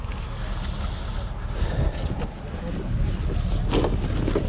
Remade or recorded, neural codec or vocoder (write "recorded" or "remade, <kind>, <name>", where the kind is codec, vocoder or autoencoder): recorded